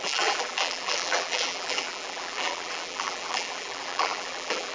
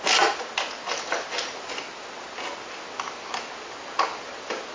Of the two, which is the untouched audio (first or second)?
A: second